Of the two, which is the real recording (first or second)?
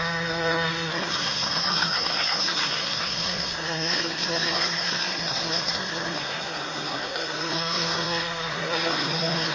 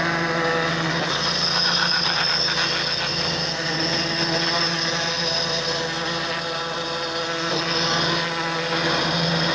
second